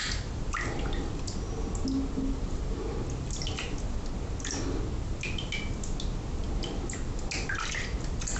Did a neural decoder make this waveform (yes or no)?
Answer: no